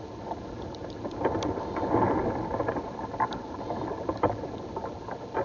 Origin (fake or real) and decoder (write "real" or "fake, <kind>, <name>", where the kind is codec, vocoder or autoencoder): real